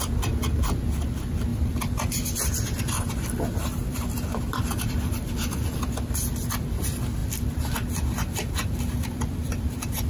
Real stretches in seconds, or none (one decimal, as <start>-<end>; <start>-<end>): 0.0-1.5; 6.5-7.2